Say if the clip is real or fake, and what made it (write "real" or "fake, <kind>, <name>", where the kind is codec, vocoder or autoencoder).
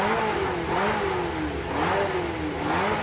real